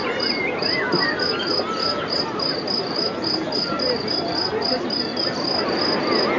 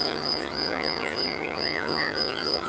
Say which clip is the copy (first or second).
second